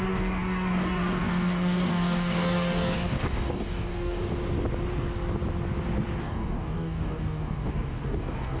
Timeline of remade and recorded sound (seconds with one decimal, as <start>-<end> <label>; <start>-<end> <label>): 0.0-4.2 remade; 4.2-6.2 recorded; 6.2-8.6 remade